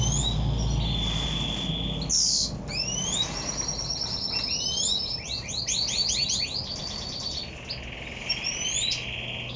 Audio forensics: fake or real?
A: real